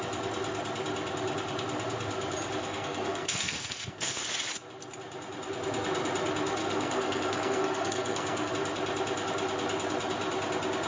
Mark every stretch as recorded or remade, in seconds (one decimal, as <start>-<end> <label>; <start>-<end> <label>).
0.0-2.6 recorded; 2.6-4.2 remade; 4.2-6.6 recorded; 6.6-8.5 remade; 8.5-10.9 recorded